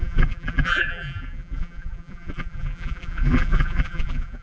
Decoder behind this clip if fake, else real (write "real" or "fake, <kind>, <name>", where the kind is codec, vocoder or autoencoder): fake, vocoder, BigVGAN v2